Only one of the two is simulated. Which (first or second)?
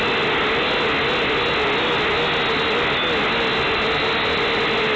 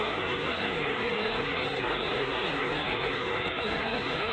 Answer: second